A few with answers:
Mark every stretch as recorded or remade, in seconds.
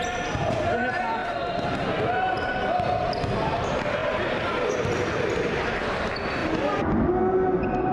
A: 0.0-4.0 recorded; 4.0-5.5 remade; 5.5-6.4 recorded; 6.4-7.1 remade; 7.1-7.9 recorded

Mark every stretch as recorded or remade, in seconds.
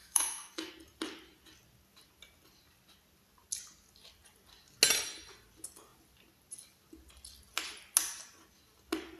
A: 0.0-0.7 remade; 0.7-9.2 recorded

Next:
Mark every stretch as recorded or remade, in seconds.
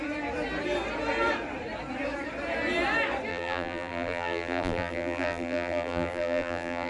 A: 0.0-3.3 recorded; 3.3-6.9 remade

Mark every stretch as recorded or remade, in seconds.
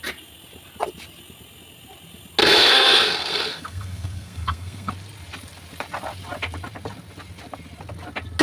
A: 0.0-2.4 recorded; 2.4-4.9 remade; 4.9-8.4 recorded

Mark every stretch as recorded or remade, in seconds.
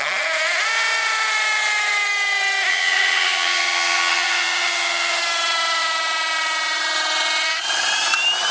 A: 0.0-2.7 recorded; 2.7-5.2 remade; 5.2-8.5 recorded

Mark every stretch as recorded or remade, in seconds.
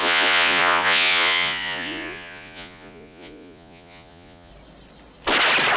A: 0.0-4.5 remade; 4.5-5.8 recorded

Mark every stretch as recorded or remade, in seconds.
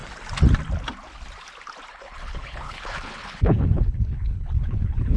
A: 0.0-1.9 recorded; 1.9-5.2 remade